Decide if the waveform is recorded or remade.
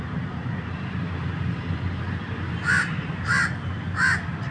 recorded